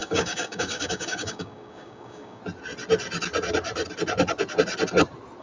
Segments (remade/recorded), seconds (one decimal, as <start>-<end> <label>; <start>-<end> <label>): 0.0-2.4 remade; 2.4-5.4 recorded